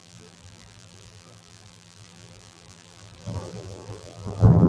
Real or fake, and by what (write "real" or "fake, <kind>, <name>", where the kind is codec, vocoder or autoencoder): fake, vocoder, BigVGAN v2